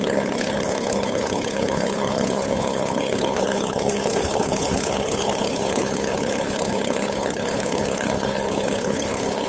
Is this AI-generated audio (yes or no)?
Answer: yes